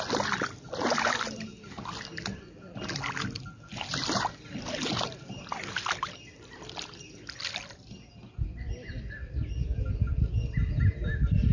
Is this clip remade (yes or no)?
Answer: no